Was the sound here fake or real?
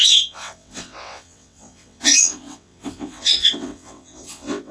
fake